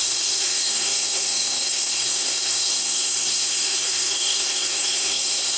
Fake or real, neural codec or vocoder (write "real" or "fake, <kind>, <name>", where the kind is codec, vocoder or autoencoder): fake, codec, SNAC